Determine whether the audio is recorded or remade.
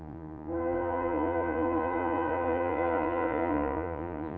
remade